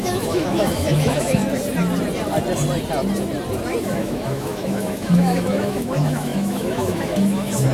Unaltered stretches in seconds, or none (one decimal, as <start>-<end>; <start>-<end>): 1.4-3.8